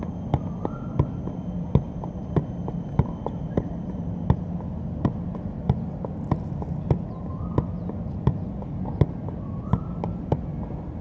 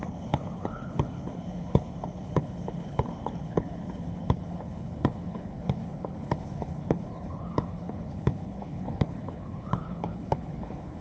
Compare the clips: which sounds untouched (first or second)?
first